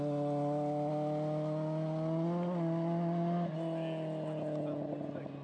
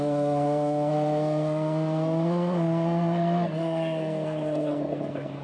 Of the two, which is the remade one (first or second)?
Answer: second